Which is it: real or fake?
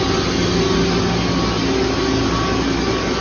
real